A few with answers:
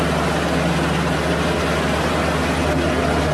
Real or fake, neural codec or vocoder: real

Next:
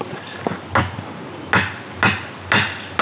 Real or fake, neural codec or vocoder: real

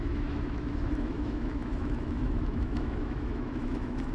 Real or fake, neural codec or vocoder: fake, autoencoder, DAC-VAE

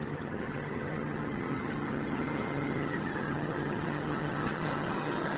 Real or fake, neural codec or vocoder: fake, vocoder, HiFi-GAN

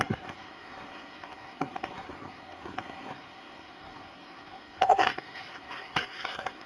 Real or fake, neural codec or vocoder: fake, codec, SNAC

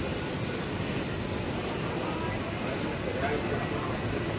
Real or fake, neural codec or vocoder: real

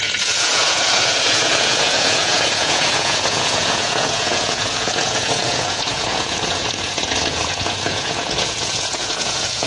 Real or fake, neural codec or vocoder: fake, vocoder, Vocos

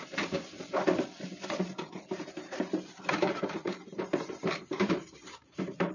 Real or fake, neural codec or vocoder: fake, vocoder, BigVGAN v2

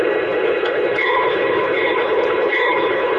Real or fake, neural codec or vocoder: fake, codec, HILCodec